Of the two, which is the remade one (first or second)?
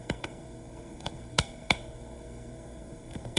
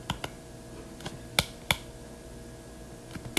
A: first